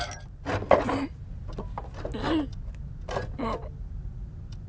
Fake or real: real